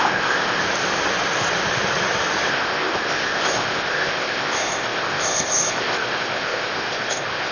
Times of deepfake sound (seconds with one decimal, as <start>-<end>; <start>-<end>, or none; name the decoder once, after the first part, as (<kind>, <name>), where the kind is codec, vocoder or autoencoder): 0.0-0.6 (codec, ZipCodec); 2.5-7.5